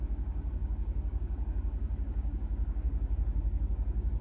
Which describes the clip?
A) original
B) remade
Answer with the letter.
B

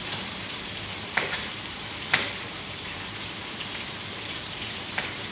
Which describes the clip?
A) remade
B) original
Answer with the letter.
A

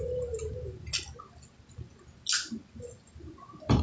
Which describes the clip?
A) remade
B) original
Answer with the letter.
B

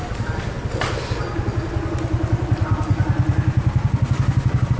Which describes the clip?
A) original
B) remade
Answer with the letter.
A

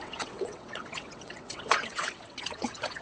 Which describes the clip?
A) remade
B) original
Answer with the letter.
A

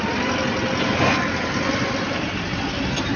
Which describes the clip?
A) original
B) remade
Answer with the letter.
A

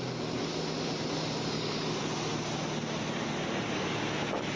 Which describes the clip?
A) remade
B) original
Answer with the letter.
B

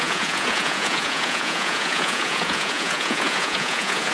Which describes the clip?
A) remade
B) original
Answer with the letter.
A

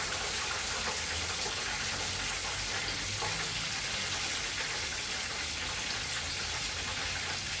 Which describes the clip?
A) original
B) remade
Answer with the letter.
A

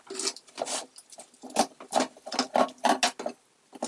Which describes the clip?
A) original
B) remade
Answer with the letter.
A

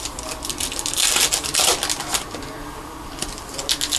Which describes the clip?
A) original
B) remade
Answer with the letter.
A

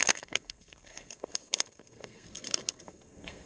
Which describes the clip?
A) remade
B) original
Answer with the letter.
A